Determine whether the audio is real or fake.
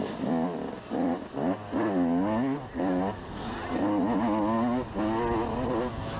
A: real